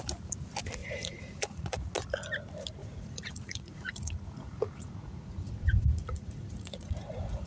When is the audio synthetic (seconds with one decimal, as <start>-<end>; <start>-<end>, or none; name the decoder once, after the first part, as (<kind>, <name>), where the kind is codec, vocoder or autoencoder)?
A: 0.8-1.9 (vocoder, Vocos); 2.8-7.5